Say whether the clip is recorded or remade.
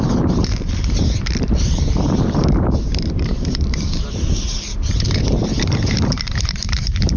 remade